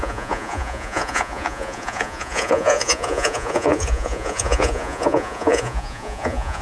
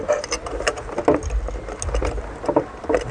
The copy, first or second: first